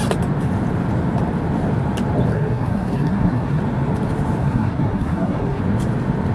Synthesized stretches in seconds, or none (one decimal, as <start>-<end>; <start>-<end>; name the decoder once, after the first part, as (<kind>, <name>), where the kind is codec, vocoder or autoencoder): 2.3-3.6 (codec, SNAC); 4.4-5.6